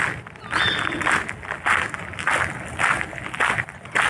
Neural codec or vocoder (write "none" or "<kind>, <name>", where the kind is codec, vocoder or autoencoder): none